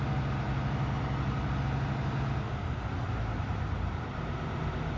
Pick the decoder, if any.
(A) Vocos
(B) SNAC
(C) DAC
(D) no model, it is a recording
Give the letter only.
D